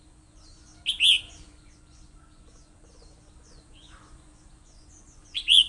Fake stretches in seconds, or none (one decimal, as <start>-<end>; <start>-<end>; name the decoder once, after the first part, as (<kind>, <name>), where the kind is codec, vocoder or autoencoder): 0.0-0.7 (vocoder, Vocos); 1.2-5.7